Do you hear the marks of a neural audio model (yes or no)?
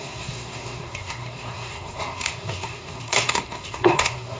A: yes